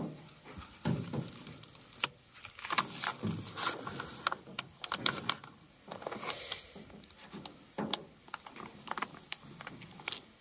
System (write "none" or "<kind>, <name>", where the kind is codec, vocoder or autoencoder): none